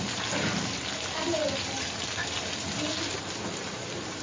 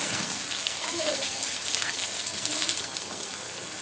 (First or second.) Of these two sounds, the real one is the first